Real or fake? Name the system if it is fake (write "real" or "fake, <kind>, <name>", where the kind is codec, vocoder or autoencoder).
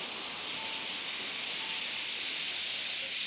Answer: real